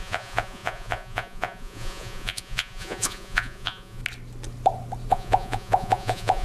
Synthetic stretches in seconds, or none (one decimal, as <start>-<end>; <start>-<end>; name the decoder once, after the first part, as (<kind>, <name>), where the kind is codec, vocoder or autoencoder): 0.0-4.0 (vocoder, Vocos); 5.1-6.4